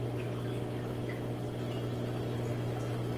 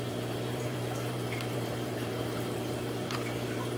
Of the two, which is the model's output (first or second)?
second